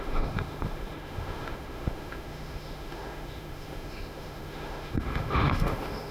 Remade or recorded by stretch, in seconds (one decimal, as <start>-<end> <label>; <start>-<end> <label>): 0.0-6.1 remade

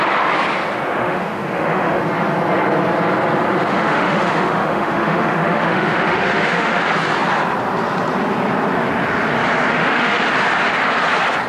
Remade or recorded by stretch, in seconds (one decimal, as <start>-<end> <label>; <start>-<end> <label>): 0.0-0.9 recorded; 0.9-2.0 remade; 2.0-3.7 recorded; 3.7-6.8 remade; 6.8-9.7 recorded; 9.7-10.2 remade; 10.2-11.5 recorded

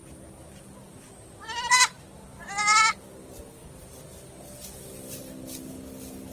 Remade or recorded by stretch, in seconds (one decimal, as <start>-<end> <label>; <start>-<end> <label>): 0.0-6.3 recorded

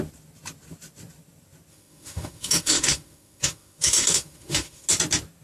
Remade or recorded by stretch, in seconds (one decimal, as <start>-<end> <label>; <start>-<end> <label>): 0.0-1.7 recorded; 1.7-4.9 remade; 4.9-5.4 recorded

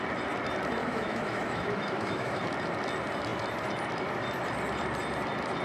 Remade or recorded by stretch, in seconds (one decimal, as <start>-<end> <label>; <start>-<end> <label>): 0.0-0.8 recorded; 0.8-2.4 remade; 2.4-5.6 recorded

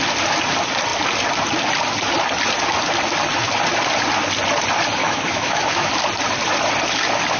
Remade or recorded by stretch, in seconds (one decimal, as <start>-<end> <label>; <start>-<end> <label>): 0.0-5.0 recorded; 5.0-5.9 remade; 5.9-7.4 recorded